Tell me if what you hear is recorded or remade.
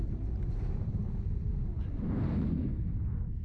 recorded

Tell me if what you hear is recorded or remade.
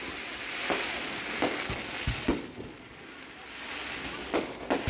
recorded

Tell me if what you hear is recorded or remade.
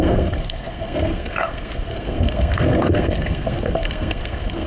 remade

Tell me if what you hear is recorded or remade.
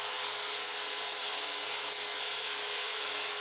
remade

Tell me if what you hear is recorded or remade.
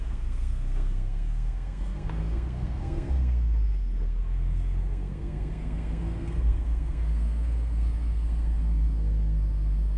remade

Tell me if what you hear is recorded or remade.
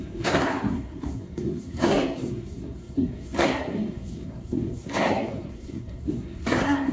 remade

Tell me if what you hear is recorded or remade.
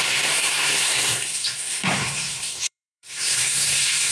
remade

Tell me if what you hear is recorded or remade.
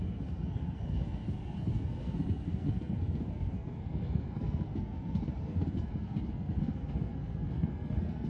remade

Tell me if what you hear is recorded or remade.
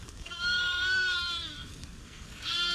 remade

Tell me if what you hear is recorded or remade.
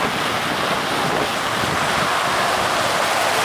recorded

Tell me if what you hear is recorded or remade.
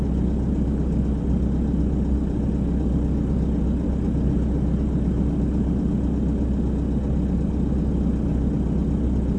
recorded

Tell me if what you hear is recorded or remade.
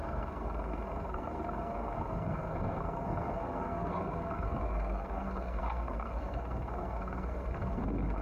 remade